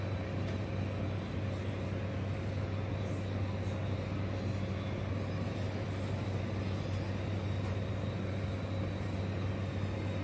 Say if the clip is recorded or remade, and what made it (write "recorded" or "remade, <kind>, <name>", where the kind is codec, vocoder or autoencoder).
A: recorded